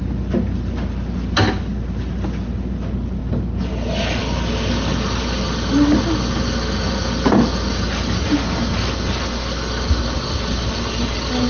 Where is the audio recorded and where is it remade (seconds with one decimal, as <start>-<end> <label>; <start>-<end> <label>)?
0.0-11.5 recorded